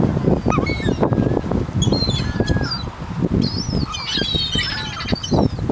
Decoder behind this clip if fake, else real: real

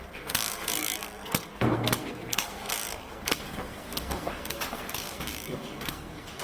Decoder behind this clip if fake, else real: fake, codec, SNAC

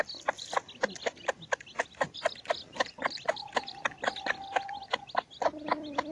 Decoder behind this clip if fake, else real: real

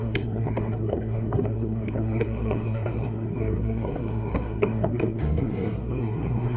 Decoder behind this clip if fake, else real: fake, codec, SNAC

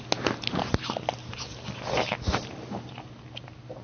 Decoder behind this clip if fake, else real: real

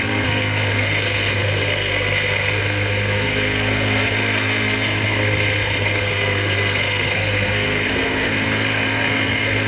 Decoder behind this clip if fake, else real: fake, codec, SNAC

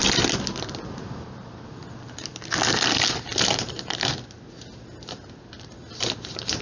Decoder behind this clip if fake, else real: real